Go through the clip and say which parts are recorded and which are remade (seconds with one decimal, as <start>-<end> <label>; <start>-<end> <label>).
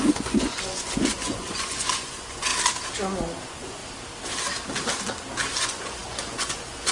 0.0-2.5 remade; 2.5-3.4 recorded; 3.4-3.8 remade; 3.8-5.6 recorded; 5.6-6.9 remade